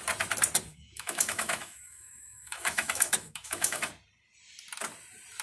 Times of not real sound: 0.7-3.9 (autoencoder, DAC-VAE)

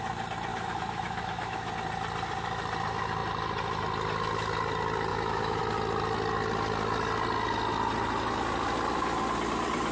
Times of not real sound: 0.5-1.7 (autoencoder, DAC-VAE); 5.1-5.6

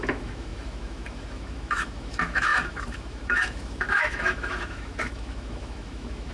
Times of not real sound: 0.0-6.3 (autoencoder, DAC-VAE)

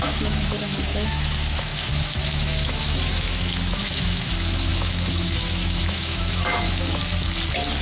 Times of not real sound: 0.0-7.0 (autoencoder, DAC-VAE)

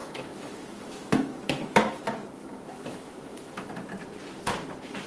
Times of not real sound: 0.0-2.0 (autoencoder, DAC-VAE); 2.4-3.7

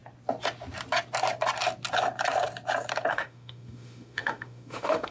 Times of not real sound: 3.1-5.1 (autoencoder, DAC-VAE)

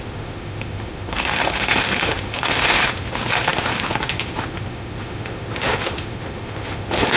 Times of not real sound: 0.0-7.2 (autoencoder, DAC-VAE)